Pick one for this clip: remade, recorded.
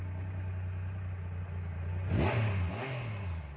recorded